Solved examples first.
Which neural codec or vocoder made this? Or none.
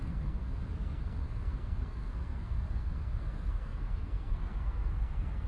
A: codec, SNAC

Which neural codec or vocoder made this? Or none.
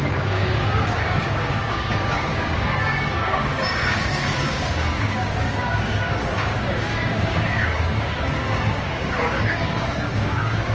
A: codec, DAC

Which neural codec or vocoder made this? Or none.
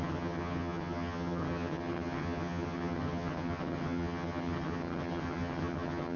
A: vocoder, HiFi-GAN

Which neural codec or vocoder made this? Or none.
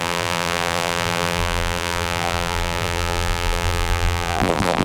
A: vocoder, BigVGAN v2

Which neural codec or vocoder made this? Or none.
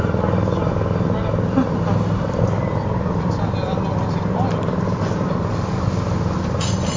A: none